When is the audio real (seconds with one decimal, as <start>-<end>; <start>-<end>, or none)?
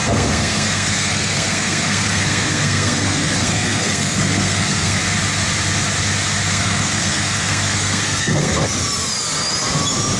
5.0-6.5; 8.7-10.2